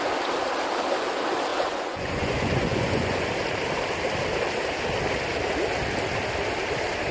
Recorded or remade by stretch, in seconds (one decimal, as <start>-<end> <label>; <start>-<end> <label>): 0.0-1.5 recorded; 1.5-3.3 remade; 3.3-7.1 recorded